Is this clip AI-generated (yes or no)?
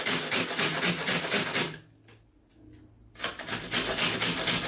no